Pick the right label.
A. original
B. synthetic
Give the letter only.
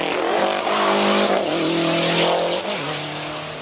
A